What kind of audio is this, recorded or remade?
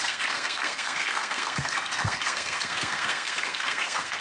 remade